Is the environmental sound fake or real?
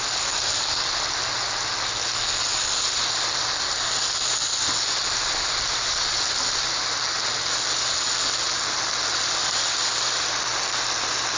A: real